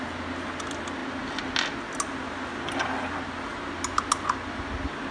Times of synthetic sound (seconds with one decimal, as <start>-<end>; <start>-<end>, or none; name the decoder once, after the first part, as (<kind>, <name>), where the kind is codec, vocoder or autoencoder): none